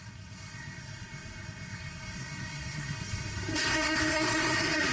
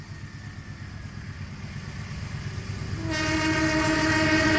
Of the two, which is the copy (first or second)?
first